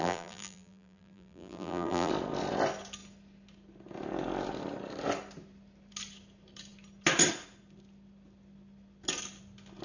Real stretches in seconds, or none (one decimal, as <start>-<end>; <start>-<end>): 2.1-9.8